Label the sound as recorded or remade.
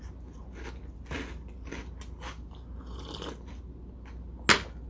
recorded